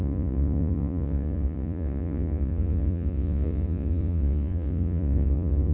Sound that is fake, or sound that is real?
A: fake